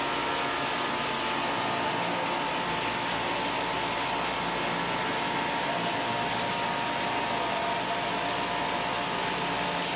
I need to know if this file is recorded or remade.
recorded